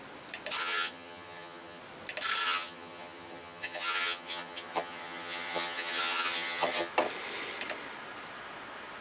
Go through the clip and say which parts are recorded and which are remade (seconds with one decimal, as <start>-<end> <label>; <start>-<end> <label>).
0.0-0.6 recorded; 0.6-1.8 remade; 1.8-2.4 recorded; 2.4-6.9 remade; 6.9-9.0 recorded